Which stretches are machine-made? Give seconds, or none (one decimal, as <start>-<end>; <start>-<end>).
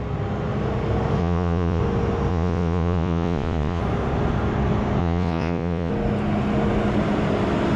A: 1.2-1.8; 2.3-3.8; 5.0-5.9